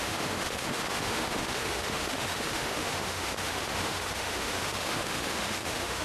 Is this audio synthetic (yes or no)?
yes